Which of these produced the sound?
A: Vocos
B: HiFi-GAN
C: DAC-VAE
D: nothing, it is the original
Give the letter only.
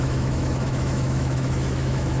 C